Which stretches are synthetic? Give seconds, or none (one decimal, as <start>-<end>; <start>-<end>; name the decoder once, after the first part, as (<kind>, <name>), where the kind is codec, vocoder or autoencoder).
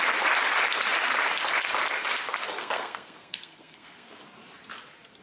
2.6-4.2 (codec, SNAC)